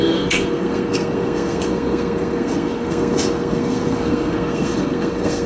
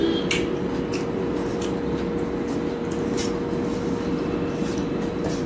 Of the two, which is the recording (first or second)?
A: second